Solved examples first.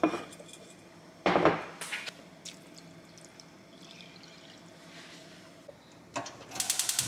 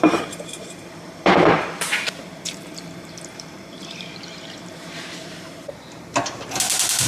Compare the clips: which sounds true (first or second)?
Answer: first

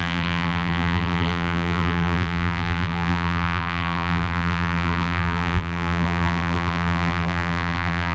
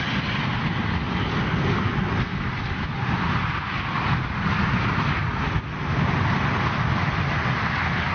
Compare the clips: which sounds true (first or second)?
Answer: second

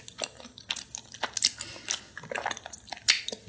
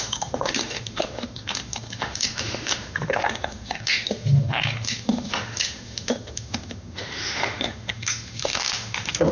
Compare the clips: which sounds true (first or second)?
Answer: first